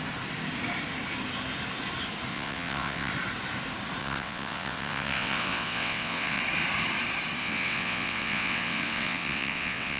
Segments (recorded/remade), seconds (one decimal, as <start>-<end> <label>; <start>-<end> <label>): 0.0-2.3 recorded; 2.3-3.1 remade; 3.1-4.0 recorded; 4.0-6.4 remade; 6.4-7.4 recorded; 7.4-10.0 remade